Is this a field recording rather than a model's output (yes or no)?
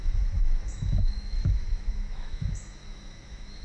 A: no